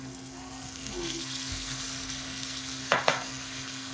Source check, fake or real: fake